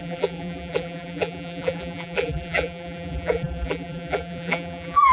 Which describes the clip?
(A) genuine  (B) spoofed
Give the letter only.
B